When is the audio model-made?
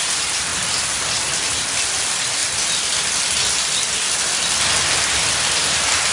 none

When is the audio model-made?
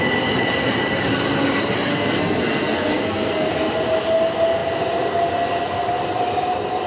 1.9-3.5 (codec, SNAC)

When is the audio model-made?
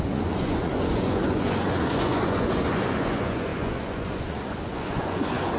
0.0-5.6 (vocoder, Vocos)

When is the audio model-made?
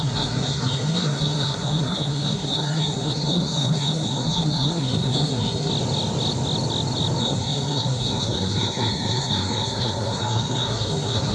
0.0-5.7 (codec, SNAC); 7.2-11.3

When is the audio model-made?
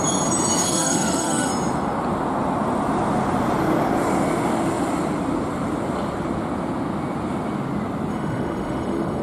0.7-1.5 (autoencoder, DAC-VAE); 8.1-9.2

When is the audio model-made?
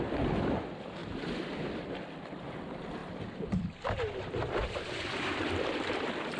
0.0-6.4 (vocoder, BigVGAN v2)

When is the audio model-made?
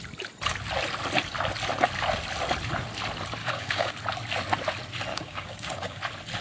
3.4-3.9 (codec, DAC); 5.1-6.0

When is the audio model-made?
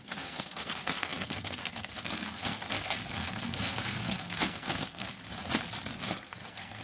0.0-5.1 (codec, SNAC); 5.9-6.8